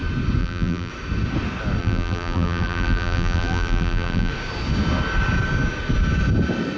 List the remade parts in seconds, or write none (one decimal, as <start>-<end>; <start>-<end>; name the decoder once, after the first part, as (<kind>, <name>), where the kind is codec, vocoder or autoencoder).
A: 0.4-0.9 (vocoder, BigVGAN v2); 1.8-4.3